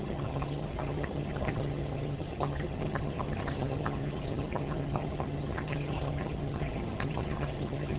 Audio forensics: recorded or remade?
remade